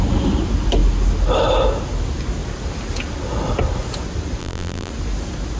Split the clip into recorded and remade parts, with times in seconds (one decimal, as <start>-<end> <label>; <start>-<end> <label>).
0.0-4.4 recorded; 4.4-4.9 remade; 4.9-5.6 recorded

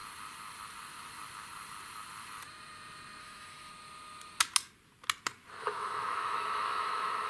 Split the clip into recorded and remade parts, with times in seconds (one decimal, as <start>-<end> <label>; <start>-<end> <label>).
0.0-3.2 recorded; 3.2-3.7 remade; 3.7-5.6 recorded; 5.6-7.3 remade

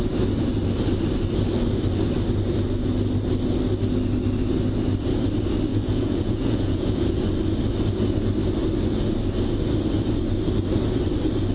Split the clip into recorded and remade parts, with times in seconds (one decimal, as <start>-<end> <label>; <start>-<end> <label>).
0.0-5.7 recorded; 5.7-7.2 remade; 7.2-11.5 recorded